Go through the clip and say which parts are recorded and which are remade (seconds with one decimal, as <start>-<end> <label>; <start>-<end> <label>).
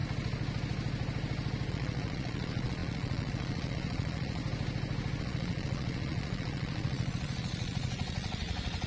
0.0-1.7 recorded; 1.7-4.4 remade; 4.4-5.2 recorded; 5.2-8.9 remade